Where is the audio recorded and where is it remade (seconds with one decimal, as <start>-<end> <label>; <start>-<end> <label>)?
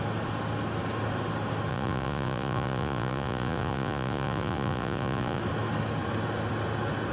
0.0-1.7 recorded; 1.7-5.4 remade; 5.4-7.1 recorded